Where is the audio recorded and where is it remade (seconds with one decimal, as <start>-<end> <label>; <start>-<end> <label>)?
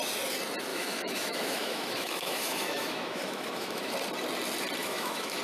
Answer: 0.0-0.7 recorded; 0.7-3.9 remade; 3.9-4.8 recorded; 4.8-5.4 remade